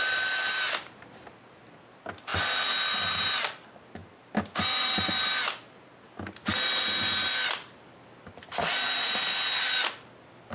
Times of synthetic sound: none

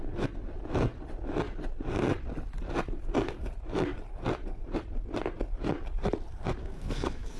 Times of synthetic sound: 6.6-7.4 (codec, SNAC)

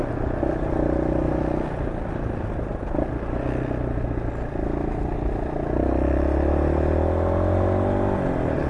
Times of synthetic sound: none

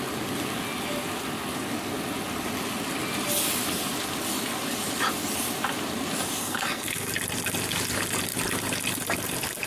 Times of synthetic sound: 6.4-7.1 (codec, SNAC)

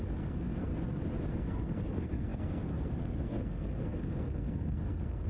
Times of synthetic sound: 0.0-0.7 (codec, SNAC); 1.3-5.3

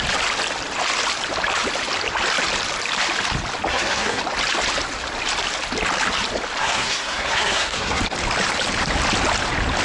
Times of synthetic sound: 3.7-4.2 (codec, SNAC); 6.6-8.0